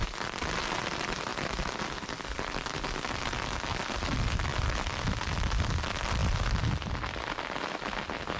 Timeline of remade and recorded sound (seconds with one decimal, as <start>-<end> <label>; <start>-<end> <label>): 0.0-8.4 recorded